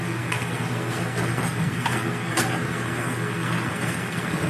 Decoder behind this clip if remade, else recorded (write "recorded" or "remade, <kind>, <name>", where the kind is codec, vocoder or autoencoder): remade, codec, SNAC